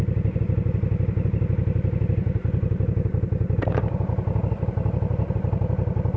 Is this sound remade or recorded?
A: recorded